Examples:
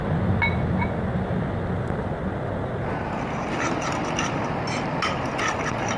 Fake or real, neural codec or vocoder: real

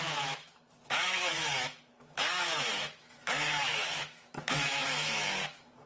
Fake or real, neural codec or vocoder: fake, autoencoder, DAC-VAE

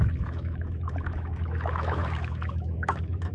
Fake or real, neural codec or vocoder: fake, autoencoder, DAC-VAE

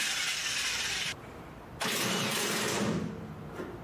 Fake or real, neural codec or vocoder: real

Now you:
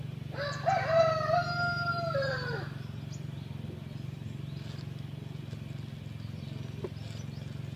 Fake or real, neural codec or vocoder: real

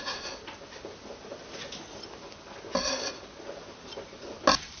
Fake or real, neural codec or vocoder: real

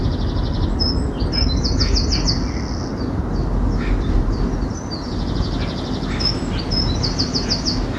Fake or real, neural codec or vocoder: real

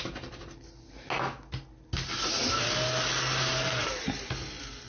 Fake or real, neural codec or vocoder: real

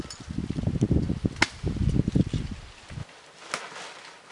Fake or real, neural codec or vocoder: real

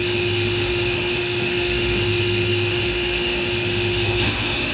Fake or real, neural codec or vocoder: fake, autoencoder, DAC-VAE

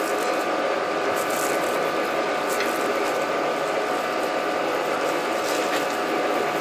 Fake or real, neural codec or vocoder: real